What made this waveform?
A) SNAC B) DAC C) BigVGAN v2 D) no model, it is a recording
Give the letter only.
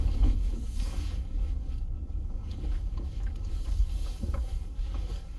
B